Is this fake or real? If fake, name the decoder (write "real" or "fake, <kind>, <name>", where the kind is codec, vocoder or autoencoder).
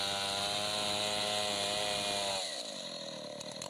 real